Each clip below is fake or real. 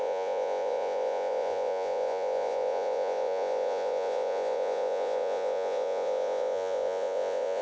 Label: fake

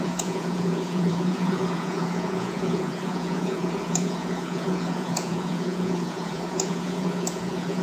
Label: fake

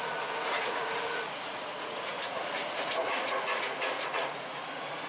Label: fake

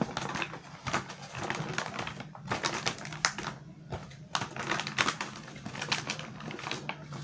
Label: real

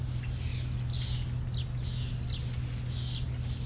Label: real